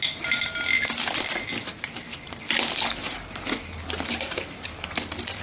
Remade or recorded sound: recorded